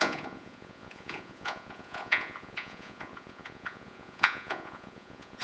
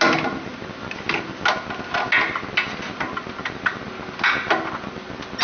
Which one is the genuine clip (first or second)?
second